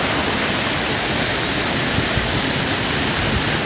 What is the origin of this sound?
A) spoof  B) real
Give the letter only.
B